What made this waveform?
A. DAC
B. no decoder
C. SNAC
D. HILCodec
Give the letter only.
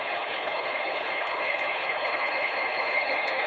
D